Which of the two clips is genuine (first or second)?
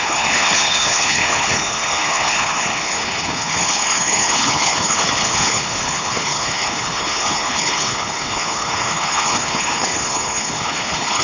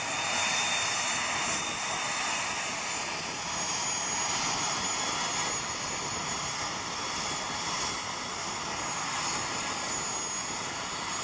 second